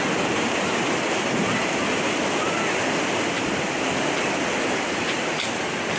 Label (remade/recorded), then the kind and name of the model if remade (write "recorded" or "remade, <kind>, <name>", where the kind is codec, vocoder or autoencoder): recorded